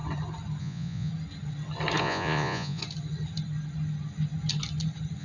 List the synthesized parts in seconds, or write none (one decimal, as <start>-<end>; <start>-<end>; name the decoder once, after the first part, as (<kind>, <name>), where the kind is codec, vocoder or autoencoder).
0.6-1.1 (vocoder, Vocos); 2.0-2.8